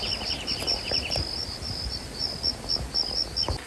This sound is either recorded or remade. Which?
recorded